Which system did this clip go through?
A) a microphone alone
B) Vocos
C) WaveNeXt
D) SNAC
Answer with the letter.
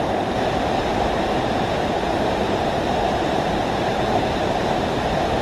A